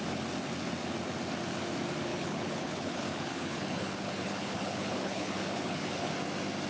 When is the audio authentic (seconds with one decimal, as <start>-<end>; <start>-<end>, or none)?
0.0-2.1; 6.1-6.7